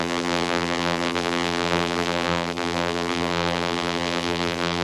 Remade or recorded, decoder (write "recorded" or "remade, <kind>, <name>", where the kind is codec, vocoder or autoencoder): remade, vocoder, BigVGAN v2